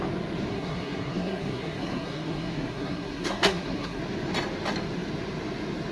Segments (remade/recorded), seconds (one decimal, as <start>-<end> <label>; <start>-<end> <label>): 0.0-0.5 recorded; 0.5-4.0 remade; 4.0-5.9 recorded

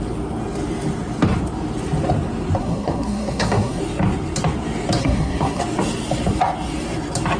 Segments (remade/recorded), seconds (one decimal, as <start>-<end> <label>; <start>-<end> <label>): 0.0-2.6 recorded; 2.6-3.8 remade; 3.8-5.0 recorded; 5.0-5.6 remade; 5.6-7.4 recorded

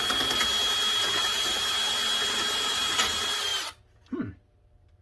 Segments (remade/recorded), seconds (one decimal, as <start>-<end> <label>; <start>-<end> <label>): 0.0-5.0 recorded

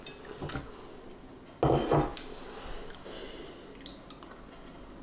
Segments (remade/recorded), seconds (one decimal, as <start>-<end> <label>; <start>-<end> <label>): 0.0-5.0 recorded

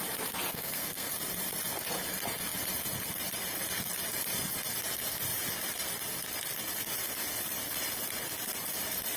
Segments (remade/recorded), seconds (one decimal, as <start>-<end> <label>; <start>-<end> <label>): 0.0-0.5 recorded; 0.5-1.1 remade; 1.1-9.2 recorded